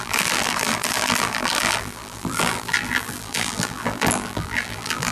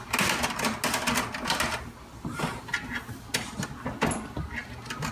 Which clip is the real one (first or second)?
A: second